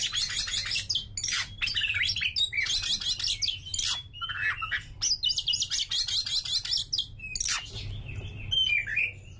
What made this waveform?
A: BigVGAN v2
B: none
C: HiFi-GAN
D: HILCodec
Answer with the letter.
B